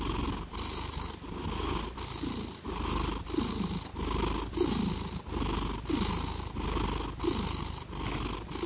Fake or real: real